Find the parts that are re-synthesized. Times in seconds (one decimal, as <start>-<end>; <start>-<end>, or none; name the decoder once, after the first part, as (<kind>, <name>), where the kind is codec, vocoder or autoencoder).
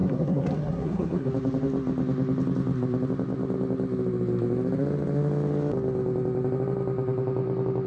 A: 0.0-1.3 (codec, SNAC)